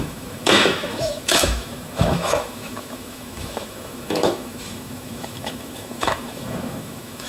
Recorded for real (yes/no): no